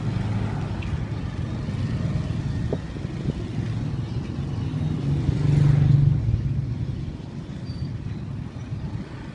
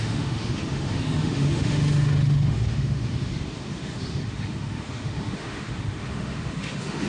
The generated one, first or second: second